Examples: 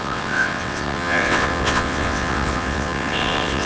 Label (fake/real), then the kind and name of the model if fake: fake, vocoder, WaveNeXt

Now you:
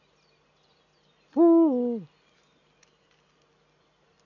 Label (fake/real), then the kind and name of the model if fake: real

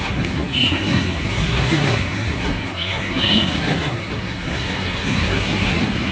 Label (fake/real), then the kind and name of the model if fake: fake, codec, SNAC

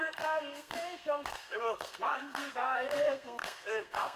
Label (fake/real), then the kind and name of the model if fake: fake, codec, SNAC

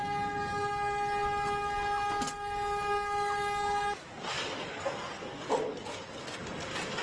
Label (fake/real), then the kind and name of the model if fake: real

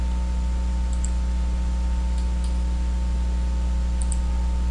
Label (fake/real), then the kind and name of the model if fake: real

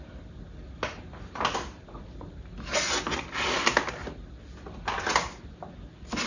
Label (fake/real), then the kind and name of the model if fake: real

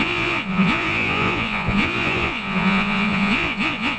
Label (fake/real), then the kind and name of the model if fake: fake, vocoder, Vocos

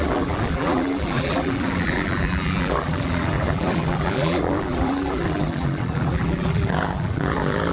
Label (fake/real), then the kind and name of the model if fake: fake, vocoder, BigVGAN v2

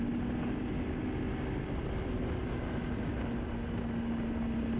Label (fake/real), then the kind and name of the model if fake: real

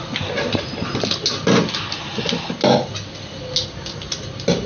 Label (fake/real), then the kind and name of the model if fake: real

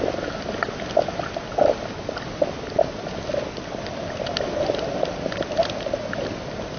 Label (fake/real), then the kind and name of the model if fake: real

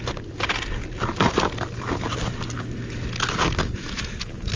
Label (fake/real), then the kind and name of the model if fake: real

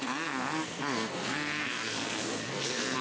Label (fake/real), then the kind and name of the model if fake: fake, codec, SNAC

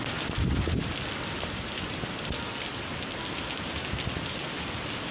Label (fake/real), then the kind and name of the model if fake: real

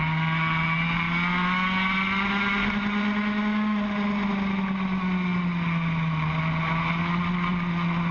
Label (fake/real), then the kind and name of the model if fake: real